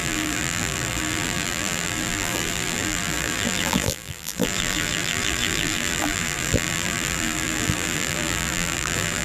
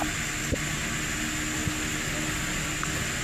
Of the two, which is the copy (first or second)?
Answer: first